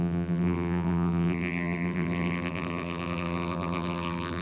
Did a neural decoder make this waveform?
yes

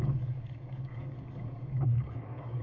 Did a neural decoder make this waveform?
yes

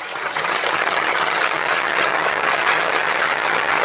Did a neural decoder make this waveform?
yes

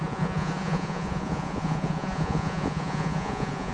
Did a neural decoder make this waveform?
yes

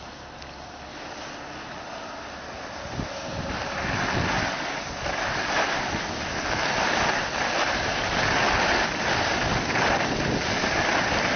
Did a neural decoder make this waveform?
no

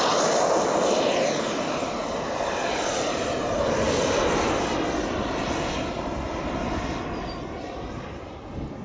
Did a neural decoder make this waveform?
no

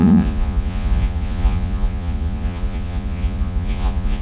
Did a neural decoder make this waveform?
yes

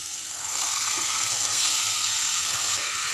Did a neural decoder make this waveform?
yes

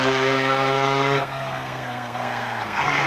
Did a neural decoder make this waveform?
yes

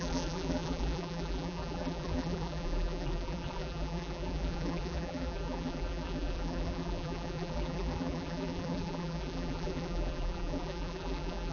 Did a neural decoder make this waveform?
yes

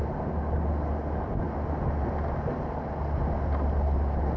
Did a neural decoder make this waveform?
no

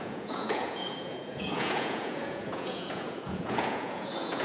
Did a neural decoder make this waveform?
yes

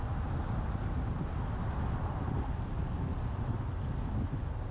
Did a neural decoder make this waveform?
no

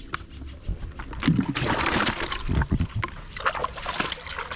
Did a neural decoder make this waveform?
no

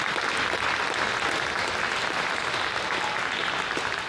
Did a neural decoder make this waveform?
no